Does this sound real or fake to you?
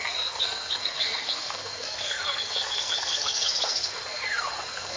fake